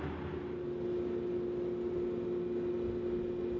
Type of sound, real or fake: real